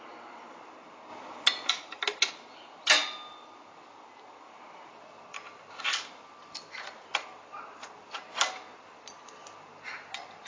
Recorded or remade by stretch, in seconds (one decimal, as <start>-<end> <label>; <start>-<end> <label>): 0.0-10.5 recorded